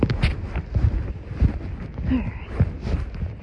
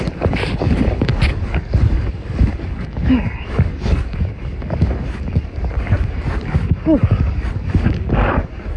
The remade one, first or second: second